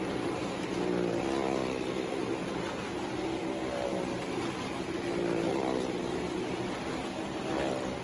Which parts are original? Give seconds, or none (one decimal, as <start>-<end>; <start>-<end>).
0.0-8.0